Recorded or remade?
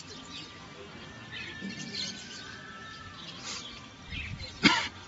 recorded